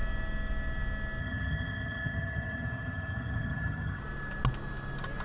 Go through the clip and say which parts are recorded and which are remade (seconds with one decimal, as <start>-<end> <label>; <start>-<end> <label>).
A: 0.0-1.2 recorded; 1.2-4.0 remade; 4.0-5.2 recorded